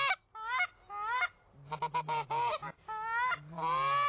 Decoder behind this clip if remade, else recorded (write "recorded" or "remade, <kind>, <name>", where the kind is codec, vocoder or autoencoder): recorded